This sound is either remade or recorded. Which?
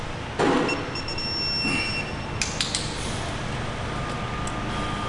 recorded